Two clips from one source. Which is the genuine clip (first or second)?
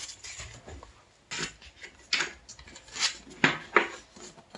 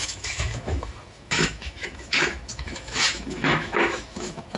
first